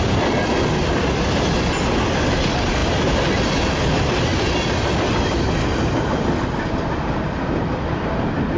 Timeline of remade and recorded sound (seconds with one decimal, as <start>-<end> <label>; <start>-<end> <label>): 0.0-8.6 recorded